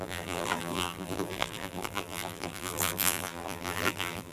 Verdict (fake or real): fake